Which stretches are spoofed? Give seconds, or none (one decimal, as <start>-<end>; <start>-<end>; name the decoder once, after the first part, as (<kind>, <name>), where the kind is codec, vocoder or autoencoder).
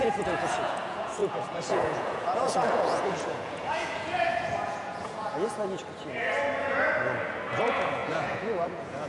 0.0-5.8 (vocoder, Vocos); 7.6-9.1